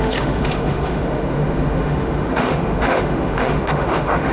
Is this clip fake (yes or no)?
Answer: yes